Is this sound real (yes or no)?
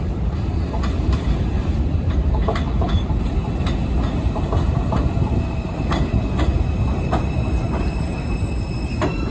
yes